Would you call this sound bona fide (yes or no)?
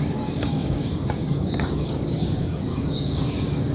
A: no